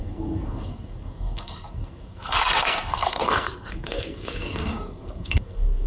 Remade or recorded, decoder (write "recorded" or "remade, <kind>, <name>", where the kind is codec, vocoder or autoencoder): remade, codec, SNAC